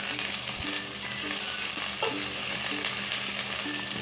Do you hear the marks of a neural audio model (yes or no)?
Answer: no